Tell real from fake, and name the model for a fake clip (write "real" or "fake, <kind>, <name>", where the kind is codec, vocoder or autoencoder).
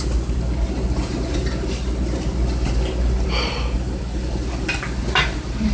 real